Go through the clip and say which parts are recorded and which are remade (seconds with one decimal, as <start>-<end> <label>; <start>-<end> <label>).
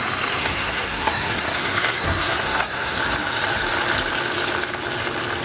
0.0-0.4 recorded; 0.4-3.0 remade; 3.0-5.4 recorded